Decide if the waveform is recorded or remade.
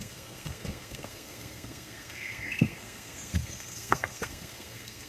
remade